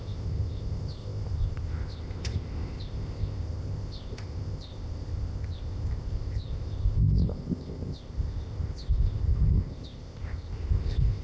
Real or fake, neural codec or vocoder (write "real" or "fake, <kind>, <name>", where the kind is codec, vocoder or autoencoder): fake, codec, ZipCodec